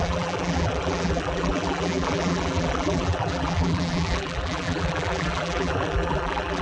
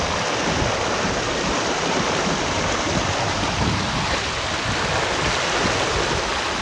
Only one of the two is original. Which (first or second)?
second